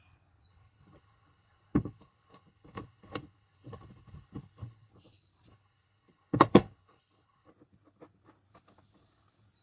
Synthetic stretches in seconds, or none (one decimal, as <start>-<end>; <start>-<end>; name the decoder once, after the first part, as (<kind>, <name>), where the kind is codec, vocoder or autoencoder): 0.5-4.9 (codec, HILCodec); 5.5-7.5